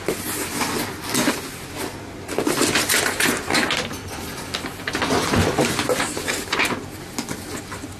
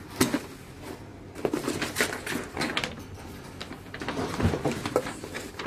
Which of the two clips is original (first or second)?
first